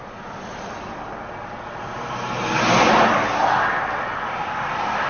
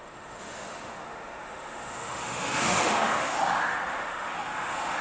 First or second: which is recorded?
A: first